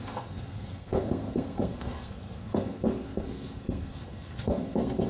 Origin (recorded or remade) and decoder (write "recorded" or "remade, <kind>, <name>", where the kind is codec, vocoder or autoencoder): remade, codec, SNAC